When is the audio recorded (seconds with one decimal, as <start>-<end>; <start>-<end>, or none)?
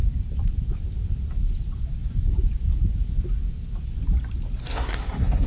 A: 0.0-4.6